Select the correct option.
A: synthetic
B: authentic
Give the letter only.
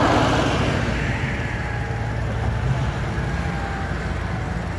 B